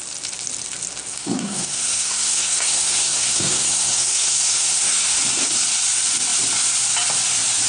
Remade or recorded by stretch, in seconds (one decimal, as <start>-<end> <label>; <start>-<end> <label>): 0.0-1.1 recorded; 1.1-5.2 remade; 5.2-7.7 recorded